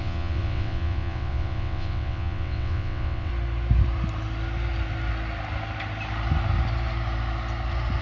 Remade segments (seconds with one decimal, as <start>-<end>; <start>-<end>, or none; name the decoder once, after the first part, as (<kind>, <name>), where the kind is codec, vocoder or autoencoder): 0.0-3.3 (vocoder, WaveNeXt)